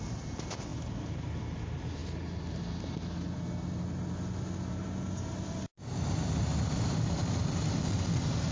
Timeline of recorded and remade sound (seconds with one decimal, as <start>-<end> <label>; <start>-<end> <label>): 0.0-8.5 recorded